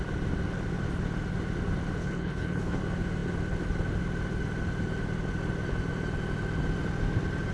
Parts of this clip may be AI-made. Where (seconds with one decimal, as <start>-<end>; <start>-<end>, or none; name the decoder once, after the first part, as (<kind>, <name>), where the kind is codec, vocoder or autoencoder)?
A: 2.0-2.8 (codec, HILCodec)

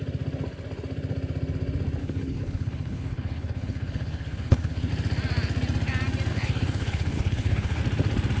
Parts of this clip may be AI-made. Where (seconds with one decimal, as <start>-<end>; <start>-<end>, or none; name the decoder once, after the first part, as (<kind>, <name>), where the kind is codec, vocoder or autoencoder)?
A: 2.0-4.9 (codec, HILCodec); 6.3-7.8

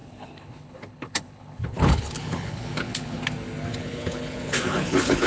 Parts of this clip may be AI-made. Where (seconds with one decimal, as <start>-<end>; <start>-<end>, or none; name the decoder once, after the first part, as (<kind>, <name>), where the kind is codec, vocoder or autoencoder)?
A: 0.0-3.2 (codec, HILCodec); 3.7-5.3

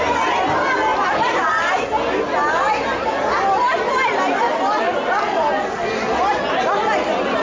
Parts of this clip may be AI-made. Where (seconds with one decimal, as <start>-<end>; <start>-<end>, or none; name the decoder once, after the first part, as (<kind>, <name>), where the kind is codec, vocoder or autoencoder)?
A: none

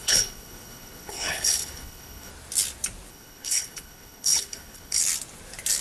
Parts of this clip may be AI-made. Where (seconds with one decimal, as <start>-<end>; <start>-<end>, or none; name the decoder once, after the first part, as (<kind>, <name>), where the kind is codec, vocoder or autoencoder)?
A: 0.0-2.3 (codec, HILCodec); 3.1-5.0

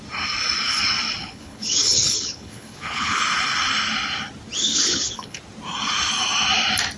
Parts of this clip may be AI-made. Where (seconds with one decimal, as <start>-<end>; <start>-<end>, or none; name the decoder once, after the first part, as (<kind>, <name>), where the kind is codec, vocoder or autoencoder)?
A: 1.2-3.2 (codec, HILCodec); 4.6-5.4

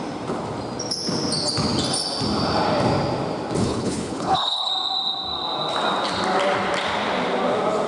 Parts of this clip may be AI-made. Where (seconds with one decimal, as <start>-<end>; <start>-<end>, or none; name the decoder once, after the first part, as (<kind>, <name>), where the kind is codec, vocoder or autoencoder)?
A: 3.6-4.7 (codec, HILCodec)

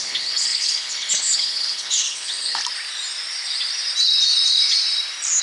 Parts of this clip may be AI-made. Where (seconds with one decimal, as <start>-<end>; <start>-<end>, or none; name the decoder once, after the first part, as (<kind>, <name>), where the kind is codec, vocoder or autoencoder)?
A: 0.0-2.6 (codec, HILCodec)